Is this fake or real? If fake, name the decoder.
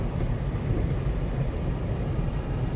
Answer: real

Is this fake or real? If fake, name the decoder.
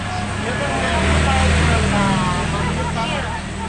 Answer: real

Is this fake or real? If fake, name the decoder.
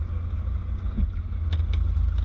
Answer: real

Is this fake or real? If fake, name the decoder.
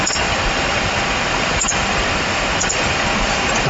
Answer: fake, vocoder, BigVGAN v2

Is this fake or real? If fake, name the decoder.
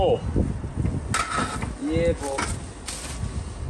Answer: real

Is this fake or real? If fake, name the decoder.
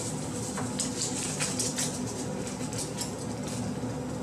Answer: real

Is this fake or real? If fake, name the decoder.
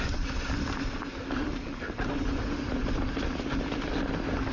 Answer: real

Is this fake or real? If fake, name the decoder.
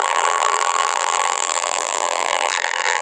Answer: fake, vocoder, BigVGAN v2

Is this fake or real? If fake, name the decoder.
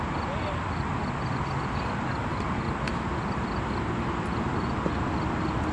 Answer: real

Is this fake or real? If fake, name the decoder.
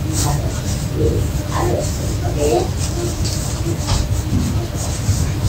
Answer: real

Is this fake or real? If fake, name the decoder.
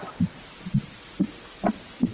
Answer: real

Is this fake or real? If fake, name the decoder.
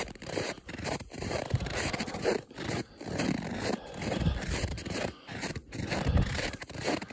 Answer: fake, vocoder, BigVGAN v2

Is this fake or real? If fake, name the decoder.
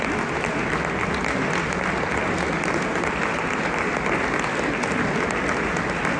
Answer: real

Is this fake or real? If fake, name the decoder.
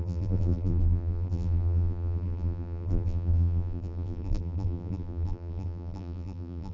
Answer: fake, vocoder, BigVGAN v2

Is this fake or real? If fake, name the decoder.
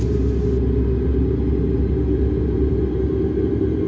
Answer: real